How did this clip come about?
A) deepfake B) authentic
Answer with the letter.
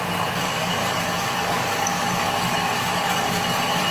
A